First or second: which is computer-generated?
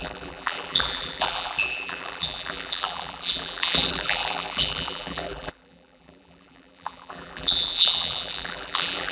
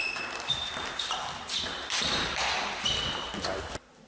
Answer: first